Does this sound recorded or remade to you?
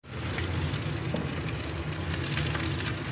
recorded